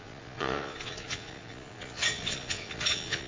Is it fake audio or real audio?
fake